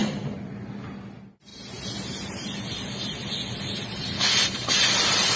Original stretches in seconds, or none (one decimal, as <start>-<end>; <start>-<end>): 0.0-5.4